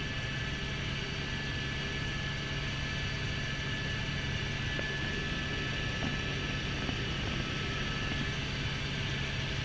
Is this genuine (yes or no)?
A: yes